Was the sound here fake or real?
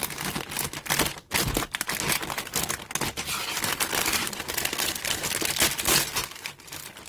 real